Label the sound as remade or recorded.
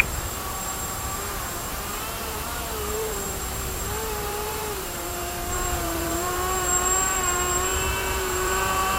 remade